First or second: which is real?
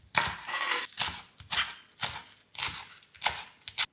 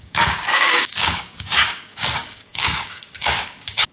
first